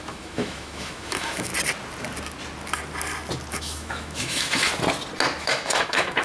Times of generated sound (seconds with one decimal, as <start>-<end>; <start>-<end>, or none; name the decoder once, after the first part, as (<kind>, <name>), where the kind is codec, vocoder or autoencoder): 0.0-1.5 (autoencoder, DAC-VAE); 3.5-4.7; 5.4-6.2